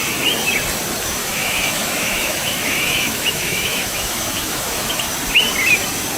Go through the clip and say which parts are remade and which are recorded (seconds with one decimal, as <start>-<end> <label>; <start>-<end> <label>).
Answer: 0.0-1.2 recorded; 1.2-4.9 remade; 4.9-6.2 recorded